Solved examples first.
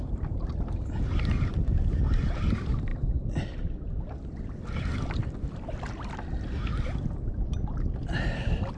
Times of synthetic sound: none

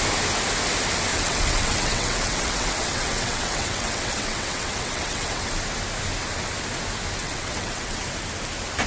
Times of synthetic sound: 1.1-5.5; 7.2-8.0